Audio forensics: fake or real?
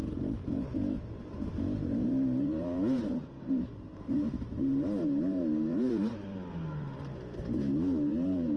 fake